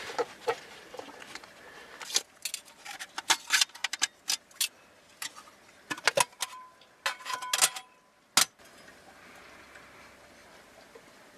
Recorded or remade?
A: recorded